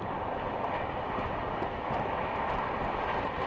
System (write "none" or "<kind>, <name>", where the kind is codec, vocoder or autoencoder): none